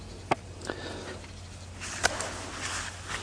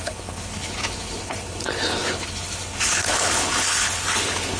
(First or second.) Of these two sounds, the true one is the first